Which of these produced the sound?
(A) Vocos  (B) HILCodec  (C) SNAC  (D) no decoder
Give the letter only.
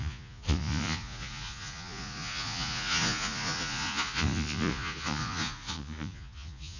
A